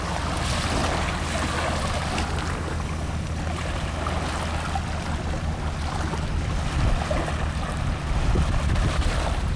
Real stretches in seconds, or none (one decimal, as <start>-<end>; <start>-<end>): 0.0-9.6